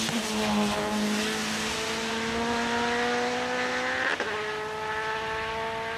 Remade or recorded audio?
recorded